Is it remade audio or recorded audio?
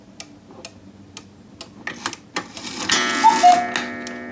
recorded